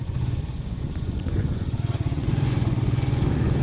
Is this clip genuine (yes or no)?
no